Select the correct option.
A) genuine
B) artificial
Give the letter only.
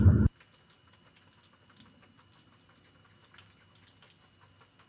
A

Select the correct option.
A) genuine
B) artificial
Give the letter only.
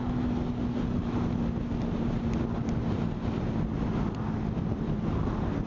A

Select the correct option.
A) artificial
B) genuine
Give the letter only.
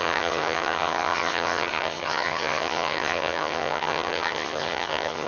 A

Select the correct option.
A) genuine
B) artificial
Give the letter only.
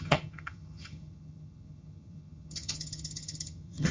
B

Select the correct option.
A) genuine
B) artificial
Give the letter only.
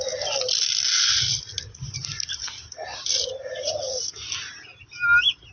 A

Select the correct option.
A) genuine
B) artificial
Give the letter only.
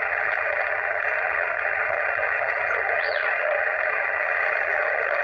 B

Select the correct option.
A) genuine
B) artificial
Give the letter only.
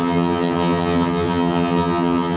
B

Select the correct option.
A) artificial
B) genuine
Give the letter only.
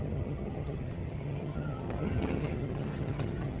A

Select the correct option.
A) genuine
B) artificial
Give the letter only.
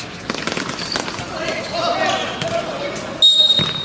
A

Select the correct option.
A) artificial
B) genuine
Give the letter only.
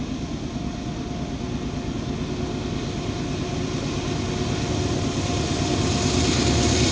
B